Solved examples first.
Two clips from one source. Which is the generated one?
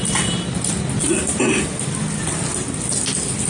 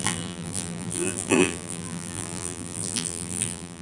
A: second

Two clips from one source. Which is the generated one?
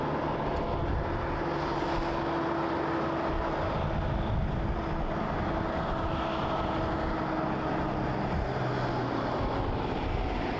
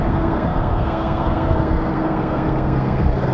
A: second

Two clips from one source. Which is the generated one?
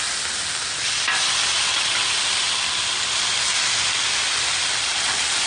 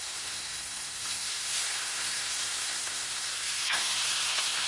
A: second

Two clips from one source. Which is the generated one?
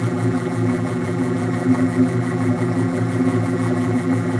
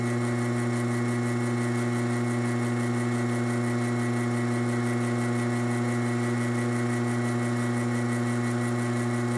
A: first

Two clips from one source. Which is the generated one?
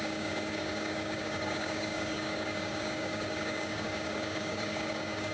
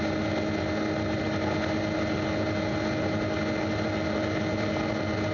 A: first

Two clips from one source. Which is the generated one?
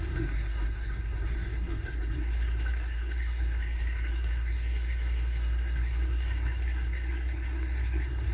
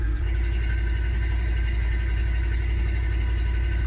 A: first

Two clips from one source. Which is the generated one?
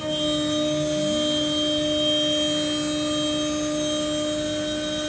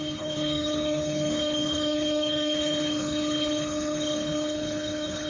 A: second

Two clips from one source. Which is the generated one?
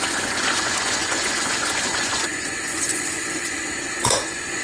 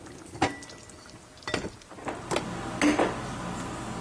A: first